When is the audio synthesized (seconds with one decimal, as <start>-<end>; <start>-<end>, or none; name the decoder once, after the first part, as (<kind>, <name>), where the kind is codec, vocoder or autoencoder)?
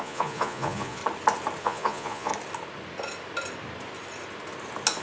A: 0.0-1.0 (vocoder, Vocos); 1.6-2.3